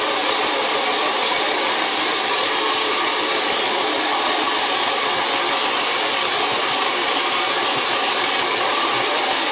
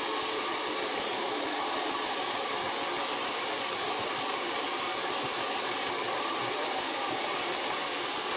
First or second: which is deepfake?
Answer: second